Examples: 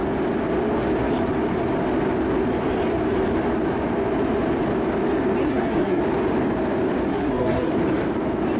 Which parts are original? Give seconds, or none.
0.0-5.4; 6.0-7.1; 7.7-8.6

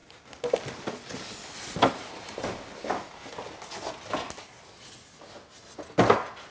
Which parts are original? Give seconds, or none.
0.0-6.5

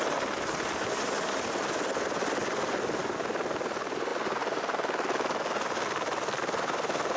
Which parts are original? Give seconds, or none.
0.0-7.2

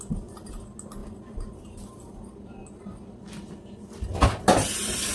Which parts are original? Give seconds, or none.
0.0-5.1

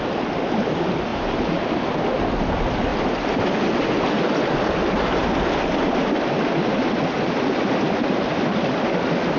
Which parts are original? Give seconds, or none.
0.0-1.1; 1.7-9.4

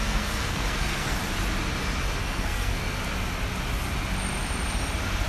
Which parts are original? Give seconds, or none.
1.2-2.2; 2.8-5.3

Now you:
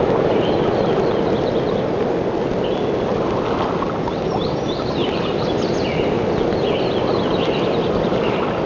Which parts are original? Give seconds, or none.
0.0-8.7